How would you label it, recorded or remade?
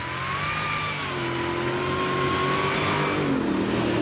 recorded